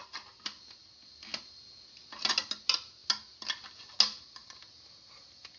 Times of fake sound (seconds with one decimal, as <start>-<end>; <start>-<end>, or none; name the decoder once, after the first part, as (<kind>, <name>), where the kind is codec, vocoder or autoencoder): none